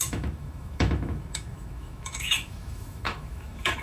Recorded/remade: remade